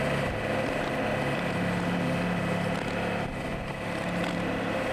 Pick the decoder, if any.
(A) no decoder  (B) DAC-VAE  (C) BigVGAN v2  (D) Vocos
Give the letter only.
A